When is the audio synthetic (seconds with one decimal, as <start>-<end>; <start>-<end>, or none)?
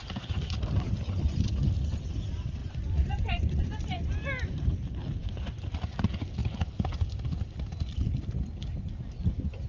2.6-4.1; 5.2-5.7